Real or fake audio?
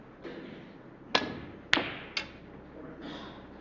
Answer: real